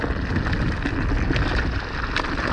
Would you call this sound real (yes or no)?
yes